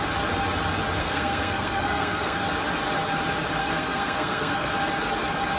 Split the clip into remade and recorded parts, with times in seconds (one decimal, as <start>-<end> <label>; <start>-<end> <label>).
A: 0.0-1.0 recorded; 1.0-2.4 remade; 2.4-3.6 recorded; 3.6-4.7 remade; 4.7-5.6 recorded